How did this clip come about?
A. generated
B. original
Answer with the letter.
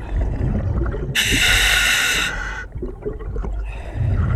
B